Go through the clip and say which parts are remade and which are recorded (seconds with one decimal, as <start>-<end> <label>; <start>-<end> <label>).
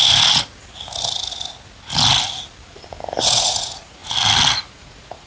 0.0-3.2 recorded; 3.2-4.0 remade; 4.0-4.7 recorded; 4.7-5.3 remade